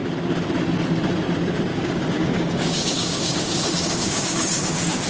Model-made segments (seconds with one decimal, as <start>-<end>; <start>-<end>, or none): 1.7-5.1